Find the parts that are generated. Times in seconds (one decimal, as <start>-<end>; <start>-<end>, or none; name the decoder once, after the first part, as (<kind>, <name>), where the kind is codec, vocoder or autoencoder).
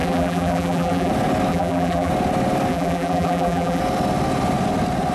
0.0-1.1 (vocoder, BigVGAN v2); 1.5-2.1; 2.7-3.8